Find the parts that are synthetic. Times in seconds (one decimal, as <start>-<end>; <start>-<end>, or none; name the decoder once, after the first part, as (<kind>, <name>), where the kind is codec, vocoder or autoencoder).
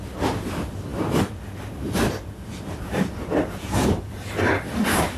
0.0-5.2 (vocoder, BigVGAN v2)